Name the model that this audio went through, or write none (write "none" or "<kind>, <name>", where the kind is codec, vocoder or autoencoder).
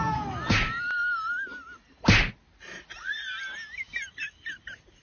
none